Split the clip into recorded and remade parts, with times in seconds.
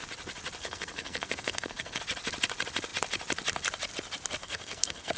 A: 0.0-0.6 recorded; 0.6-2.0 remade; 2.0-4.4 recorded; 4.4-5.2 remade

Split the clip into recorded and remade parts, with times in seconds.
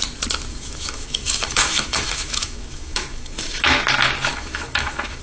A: 0.0-0.5 recorded; 0.5-3.6 remade; 3.6-4.3 recorded; 4.3-5.2 remade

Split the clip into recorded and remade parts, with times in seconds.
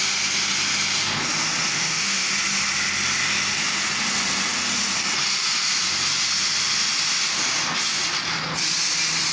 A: 0.0-1.7 recorded; 1.7-2.3 remade; 2.3-9.3 recorded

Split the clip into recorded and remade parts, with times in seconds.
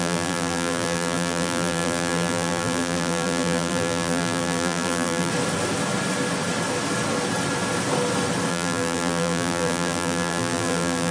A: 0.0-5.3 remade; 5.3-8.5 recorded; 8.5-11.1 remade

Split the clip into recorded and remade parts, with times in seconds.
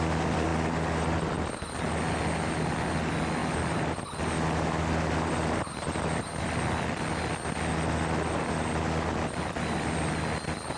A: 0.0-10.8 recorded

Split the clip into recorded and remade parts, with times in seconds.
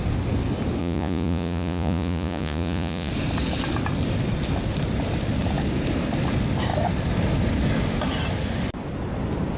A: 0.0-0.8 recorded; 0.8-3.1 remade; 3.1-9.6 recorded